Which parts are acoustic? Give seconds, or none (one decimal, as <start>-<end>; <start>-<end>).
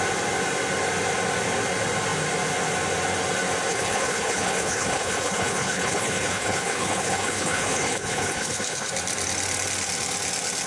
0.0-3.7; 8.9-10.7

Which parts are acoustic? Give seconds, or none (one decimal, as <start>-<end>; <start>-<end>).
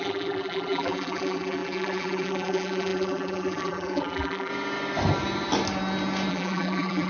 4.5-6.3